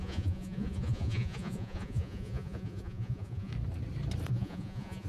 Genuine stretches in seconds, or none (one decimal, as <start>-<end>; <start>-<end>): 3.5-4.3